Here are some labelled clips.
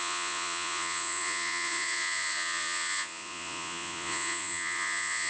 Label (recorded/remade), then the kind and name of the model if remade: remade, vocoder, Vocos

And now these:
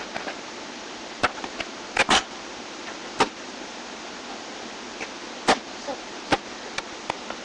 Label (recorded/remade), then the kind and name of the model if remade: recorded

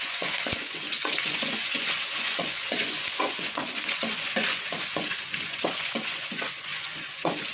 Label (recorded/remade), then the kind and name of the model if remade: remade, vocoder, Vocos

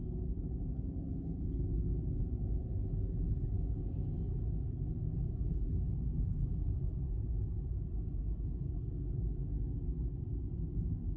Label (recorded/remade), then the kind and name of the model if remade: recorded